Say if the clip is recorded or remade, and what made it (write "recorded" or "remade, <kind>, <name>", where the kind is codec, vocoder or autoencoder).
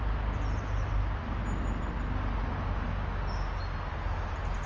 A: recorded